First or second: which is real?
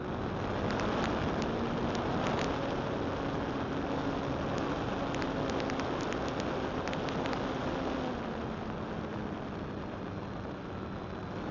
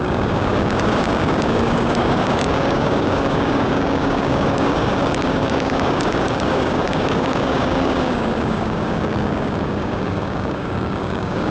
first